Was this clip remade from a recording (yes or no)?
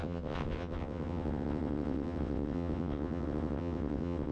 yes